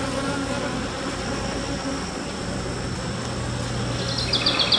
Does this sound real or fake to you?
real